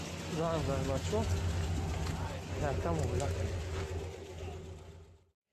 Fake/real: real